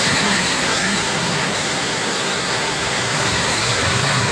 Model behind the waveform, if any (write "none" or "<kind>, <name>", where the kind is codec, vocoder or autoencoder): codec, SNAC